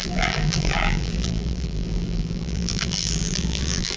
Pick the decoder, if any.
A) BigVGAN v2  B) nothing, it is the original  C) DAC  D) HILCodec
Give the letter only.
A